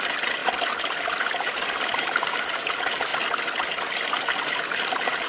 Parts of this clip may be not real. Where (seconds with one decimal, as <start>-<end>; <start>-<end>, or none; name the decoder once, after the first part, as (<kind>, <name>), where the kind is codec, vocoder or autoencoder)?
0.0-0.4 (vocoder, BigVGAN v2); 1.4-3.1; 4.6-5.3